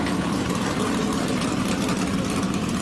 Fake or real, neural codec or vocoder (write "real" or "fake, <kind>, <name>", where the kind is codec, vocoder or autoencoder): real